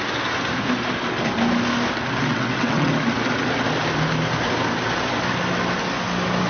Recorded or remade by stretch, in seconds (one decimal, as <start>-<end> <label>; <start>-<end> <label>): 0.0-2.3 recorded; 2.3-2.9 remade; 2.9-6.5 recorded